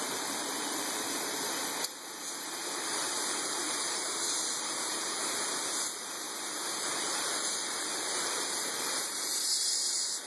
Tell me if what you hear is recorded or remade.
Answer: remade